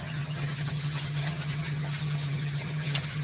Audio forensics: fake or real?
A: fake